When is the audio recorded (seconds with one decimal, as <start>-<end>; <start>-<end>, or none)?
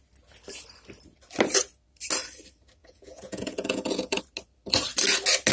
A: 0.0-2.8; 4.2-5.5